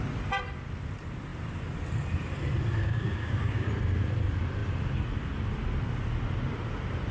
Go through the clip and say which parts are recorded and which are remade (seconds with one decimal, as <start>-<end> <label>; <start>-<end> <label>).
0.0-2.8 recorded; 2.8-3.7 remade; 3.7-7.1 recorded